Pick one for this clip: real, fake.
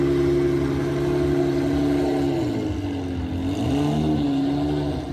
real